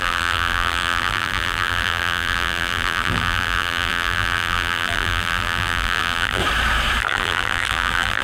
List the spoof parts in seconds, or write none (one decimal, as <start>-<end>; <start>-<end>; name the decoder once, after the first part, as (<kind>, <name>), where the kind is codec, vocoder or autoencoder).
0.0-6.4 (vocoder, BigVGAN v2); 7.0-8.2